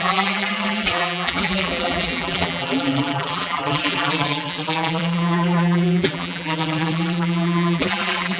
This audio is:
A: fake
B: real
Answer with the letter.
A